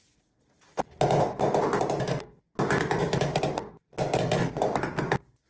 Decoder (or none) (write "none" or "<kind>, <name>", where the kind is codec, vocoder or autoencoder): none